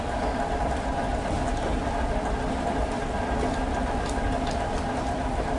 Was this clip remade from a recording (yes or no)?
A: yes